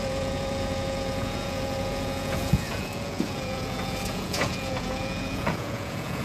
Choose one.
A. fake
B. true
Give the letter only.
A